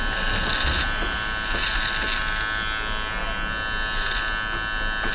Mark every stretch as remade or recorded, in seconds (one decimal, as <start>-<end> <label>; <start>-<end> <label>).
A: 0.0-5.1 recorded